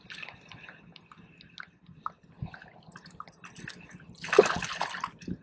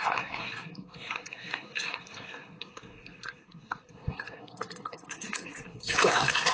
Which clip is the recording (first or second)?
first